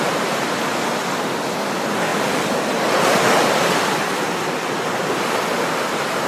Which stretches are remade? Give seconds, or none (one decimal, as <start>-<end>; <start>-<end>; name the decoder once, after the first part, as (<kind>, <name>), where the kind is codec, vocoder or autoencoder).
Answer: none